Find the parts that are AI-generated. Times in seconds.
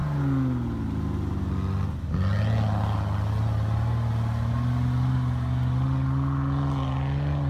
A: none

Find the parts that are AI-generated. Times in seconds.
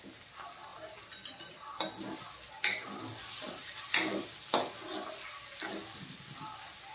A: none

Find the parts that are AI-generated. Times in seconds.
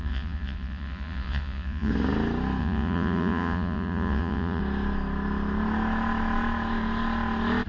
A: 0.0-1.9 (vocoder, Vocos); 2.6-4.6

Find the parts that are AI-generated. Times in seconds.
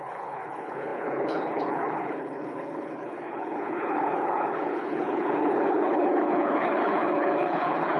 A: 0.0-8.0 (codec, HILCodec)